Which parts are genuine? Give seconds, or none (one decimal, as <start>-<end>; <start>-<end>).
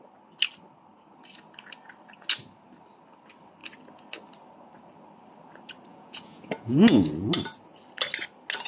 0.0-5.9; 7.3-8.7